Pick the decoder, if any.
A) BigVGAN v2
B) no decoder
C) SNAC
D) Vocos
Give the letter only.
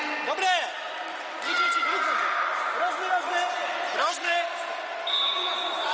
B